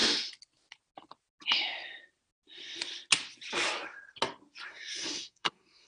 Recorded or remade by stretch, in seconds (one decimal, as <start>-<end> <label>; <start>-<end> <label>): 0.0-4.7 recorded; 4.7-5.9 remade